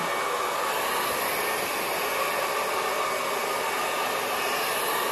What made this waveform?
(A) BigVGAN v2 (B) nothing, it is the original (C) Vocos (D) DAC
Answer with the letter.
B